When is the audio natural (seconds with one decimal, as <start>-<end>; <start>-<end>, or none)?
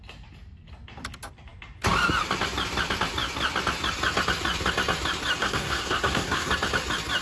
0.0-5.4; 6.5-7.2